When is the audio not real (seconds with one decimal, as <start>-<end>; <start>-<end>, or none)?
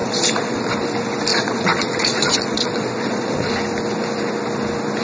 0.0-0.7; 1.3-3.5